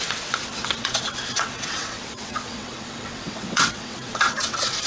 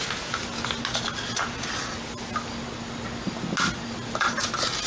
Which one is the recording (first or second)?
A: second